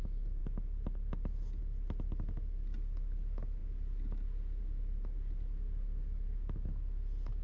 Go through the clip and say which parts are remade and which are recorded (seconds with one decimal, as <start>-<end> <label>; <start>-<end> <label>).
0.0-7.4 recorded